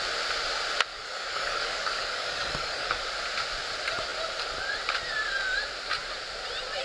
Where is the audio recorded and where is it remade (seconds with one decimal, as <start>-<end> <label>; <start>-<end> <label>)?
0.0-0.9 recorded; 0.9-3.0 remade; 3.0-6.8 recorded